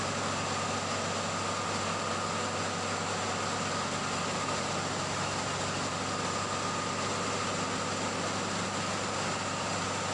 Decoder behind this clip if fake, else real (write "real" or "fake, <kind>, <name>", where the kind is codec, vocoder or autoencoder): real